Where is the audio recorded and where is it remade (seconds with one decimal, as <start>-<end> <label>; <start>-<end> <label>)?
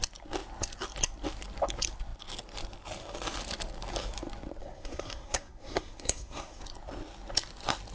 0.0-4.6 recorded; 4.6-6.6 remade; 6.6-7.9 recorded